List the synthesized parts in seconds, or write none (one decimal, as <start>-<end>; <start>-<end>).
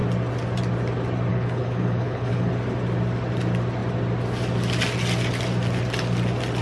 1.3-2.5